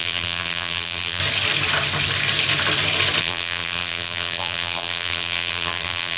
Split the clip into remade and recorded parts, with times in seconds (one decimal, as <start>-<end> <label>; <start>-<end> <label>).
0.0-1.2 remade; 1.2-3.2 recorded; 3.2-6.2 remade